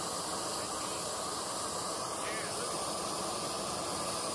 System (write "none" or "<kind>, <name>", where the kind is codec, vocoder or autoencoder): none